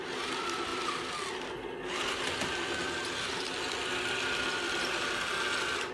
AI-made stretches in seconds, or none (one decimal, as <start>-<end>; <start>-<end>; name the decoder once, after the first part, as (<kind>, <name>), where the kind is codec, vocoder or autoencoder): none